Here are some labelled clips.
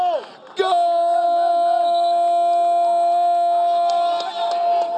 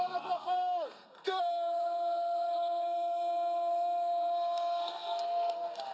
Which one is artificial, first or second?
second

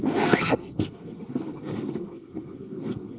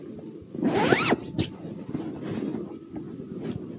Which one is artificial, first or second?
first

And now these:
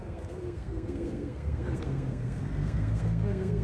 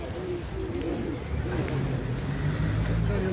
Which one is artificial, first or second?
first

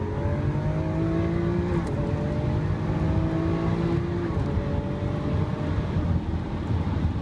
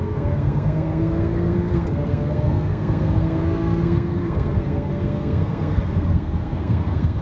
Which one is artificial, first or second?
second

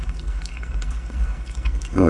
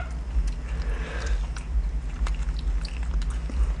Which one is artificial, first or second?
first